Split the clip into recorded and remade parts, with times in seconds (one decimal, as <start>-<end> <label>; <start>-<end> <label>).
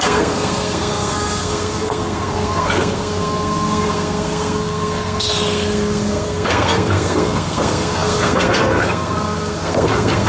0.0-10.3 remade